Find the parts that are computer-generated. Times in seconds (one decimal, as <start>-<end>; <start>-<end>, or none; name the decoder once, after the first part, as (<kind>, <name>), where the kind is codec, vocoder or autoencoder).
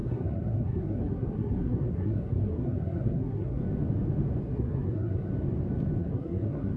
0.0-3.6 (codec, SNAC); 4.4-5.3; 6.0-6.8